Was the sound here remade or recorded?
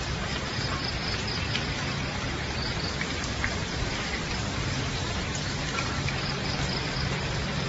remade